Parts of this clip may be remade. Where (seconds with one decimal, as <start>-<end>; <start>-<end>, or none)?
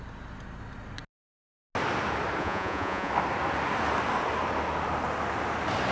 2.4-3.1